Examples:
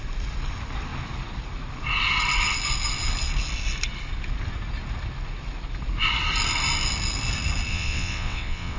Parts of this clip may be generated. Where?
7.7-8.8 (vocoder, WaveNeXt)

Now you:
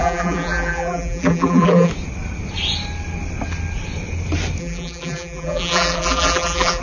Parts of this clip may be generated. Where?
0.0-1.9 (vocoder, BigVGAN v2); 4.6-6.8

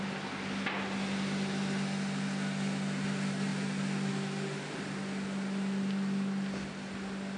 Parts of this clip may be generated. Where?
none

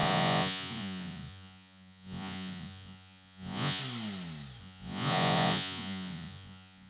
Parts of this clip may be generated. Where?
0.0-3.8 (vocoder, Vocos); 4.6-6.9